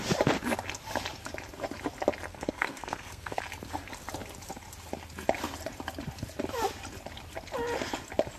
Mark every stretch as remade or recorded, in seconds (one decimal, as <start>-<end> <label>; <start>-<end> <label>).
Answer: 0.0-2.3 recorded; 2.3-3.4 remade; 3.4-8.4 recorded